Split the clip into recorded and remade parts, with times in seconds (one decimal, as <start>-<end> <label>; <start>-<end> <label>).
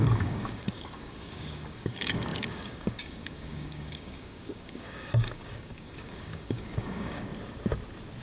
0.0-7.3 remade; 7.3-8.2 recorded